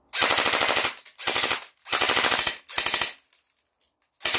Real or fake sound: real